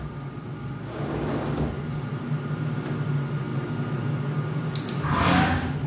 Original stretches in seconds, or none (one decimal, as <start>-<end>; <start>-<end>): 0.0-0.6; 1.7-5.9